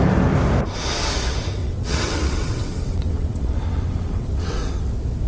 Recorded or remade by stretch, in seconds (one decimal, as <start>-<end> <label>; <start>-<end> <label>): 0.0-1.6 recorded; 1.6-4.7 remade; 4.7-5.3 recorded